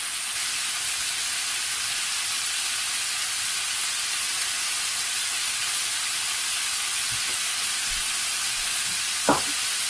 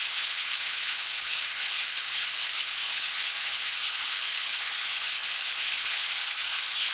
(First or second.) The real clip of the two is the first